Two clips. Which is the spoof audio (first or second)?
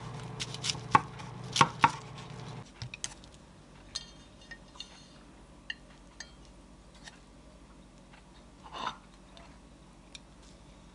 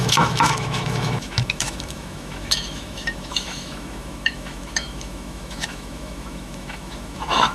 second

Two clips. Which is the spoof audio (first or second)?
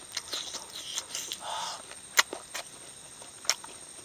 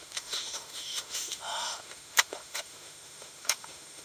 second